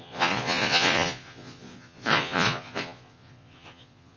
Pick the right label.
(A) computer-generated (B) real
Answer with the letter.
A